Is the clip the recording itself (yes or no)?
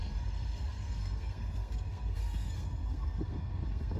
no